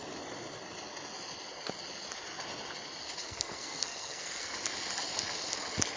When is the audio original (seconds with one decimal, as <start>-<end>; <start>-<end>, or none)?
0.0-3.2; 4.5-6.0